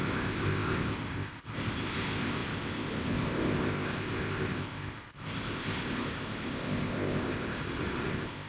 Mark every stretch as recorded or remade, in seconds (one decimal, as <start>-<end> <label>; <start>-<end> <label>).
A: 0.0-7.6 remade; 7.6-8.1 recorded; 8.1-8.5 remade